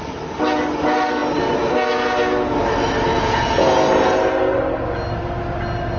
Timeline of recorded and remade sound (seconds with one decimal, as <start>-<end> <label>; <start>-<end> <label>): 0.0-3.1 recorded; 3.1-3.7 remade; 3.7-6.0 recorded